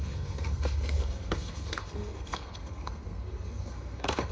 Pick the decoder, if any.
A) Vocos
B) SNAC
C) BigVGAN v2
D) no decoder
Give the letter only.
B